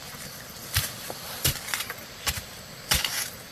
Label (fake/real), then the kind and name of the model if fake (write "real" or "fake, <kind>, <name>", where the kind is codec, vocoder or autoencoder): fake, vocoder, BigVGAN v2